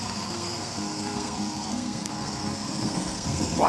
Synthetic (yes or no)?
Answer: yes